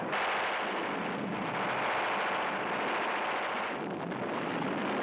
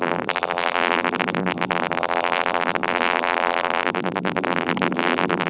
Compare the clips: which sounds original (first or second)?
first